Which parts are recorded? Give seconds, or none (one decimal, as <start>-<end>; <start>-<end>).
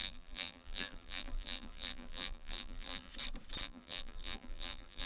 3.1-3.6